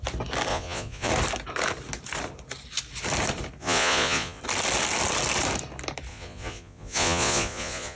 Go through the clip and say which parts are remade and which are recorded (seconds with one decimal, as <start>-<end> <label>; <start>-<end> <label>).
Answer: 0.0-0.5 recorded; 0.5-1.1 remade; 1.1-3.6 recorded; 3.6-4.4 remade; 4.4-6.1 recorded; 6.1-8.0 remade